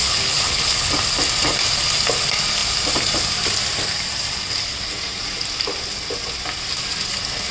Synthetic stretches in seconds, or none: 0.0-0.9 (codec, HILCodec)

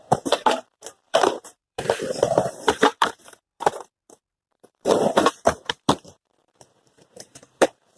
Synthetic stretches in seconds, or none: 0.0-8.0 (vocoder, BigVGAN v2)

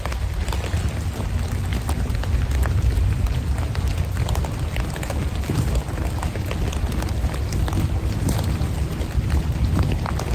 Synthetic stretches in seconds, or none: none